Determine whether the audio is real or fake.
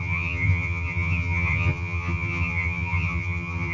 fake